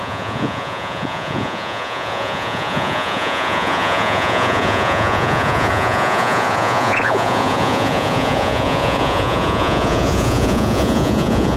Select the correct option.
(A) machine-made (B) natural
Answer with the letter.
A